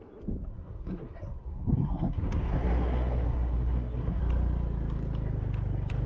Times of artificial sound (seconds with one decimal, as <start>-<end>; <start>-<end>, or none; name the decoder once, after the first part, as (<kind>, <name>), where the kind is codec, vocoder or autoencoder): 0.5-4.2 (codec, SNAC)